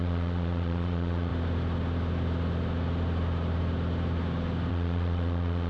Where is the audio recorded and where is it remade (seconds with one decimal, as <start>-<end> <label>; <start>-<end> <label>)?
0.0-1.3 remade; 1.3-4.7 recorded; 4.7-5.7 remade